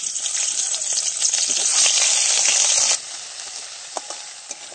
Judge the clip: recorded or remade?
recorded